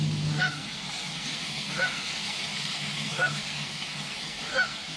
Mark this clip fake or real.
fake